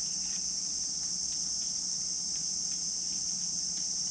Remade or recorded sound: recorded